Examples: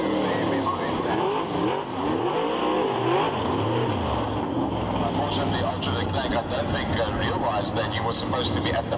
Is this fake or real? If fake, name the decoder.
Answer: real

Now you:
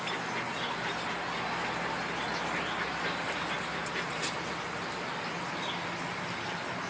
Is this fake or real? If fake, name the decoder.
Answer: real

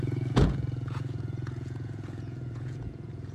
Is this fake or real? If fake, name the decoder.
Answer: fake, vocoder, Vocos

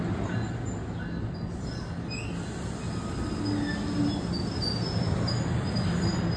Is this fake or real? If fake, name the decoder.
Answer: real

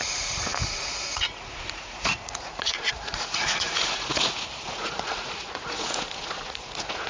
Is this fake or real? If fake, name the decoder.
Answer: fake, vocoder, Vocos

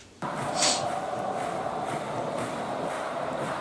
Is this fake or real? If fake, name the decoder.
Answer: real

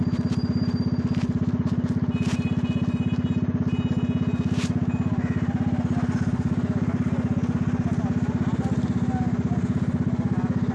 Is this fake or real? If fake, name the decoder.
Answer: real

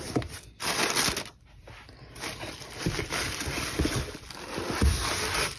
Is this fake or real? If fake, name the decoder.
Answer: real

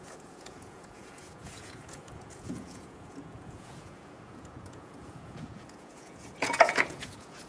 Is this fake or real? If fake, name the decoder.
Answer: fake, vocoder, Vocos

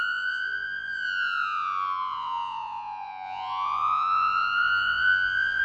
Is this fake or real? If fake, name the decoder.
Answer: fake, vocoder, Vocos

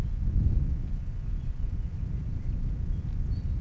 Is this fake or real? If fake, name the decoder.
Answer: real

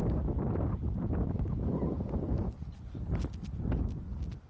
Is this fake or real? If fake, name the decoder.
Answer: real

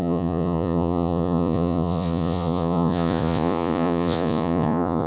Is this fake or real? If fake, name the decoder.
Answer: fake, vocoder, Vocos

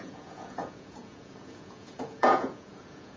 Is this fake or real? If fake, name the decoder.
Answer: fake, vocoder, Vocos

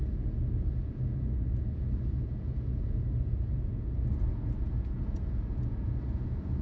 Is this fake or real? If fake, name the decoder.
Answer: fake, vocoder, Vocos